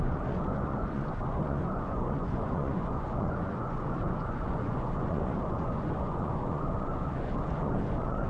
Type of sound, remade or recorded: remade